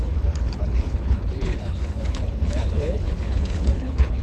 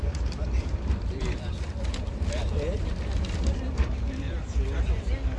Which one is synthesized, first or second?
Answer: first